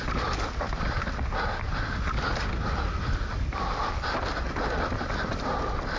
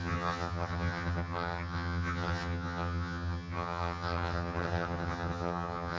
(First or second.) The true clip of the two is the first